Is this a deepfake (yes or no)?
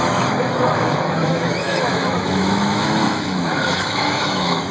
yes